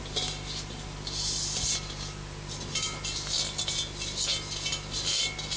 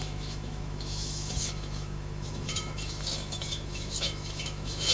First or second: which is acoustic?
first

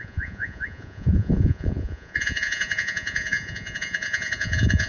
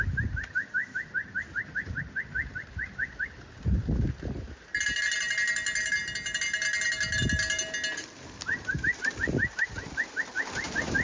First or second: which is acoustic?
second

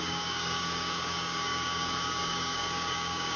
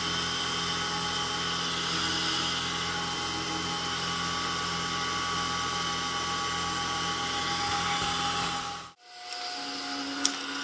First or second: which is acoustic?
second